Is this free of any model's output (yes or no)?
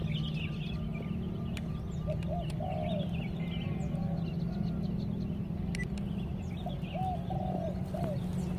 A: yes